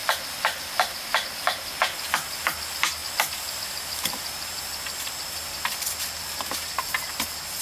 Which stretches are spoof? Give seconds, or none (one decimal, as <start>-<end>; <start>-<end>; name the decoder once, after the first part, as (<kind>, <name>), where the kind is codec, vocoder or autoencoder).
0.0-1.4 (vocoder, BigVGAN v2); 3.0-5.1